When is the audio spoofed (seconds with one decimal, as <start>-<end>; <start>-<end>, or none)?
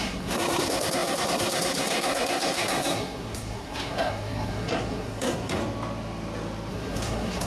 0.0-5.6; 6.7-7.5